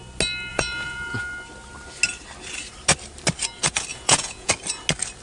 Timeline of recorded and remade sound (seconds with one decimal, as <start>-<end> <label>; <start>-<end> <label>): 0.0-0.5 recorded; 0.5-1.2 remade; 1.2-3.9 recorded; 3.9-4.5 remade; 4.5-5.2 recorded